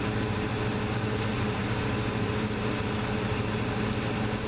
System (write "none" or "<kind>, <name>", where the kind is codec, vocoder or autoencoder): none